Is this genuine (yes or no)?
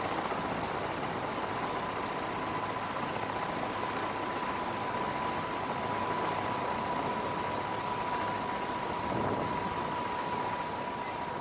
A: yes